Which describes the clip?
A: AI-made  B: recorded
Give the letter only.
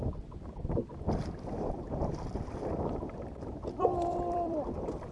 A